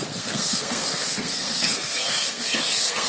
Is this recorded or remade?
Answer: remade